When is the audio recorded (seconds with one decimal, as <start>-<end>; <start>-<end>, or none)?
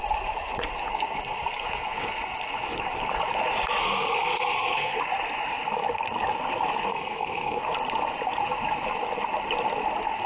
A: 0.0-3.8; 5.0-6.9; 7.6-10.3